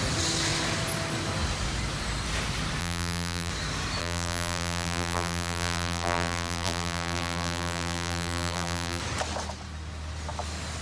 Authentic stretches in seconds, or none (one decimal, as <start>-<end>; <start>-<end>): 0.0-2.8; 3.5-4.0; 9.0-10.8